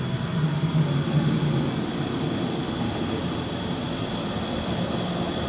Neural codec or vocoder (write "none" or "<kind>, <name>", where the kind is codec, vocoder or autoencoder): none